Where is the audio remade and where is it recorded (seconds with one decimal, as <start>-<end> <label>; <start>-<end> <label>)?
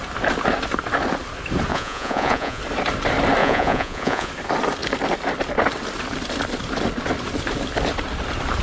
0.0-1.7 recorded; 1.7-2.6 remade; 2.6-3.4 recorded; 3.4-4.3 remade; 4.3-8.6 recorded